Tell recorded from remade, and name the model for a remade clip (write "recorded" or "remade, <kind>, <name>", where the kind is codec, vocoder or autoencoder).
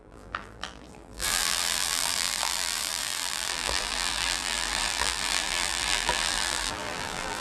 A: remade, vocoder, BigVGAN v2